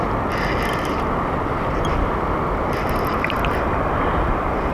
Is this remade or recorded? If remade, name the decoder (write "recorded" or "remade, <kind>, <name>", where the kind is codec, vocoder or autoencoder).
recorded